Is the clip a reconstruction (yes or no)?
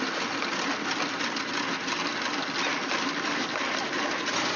no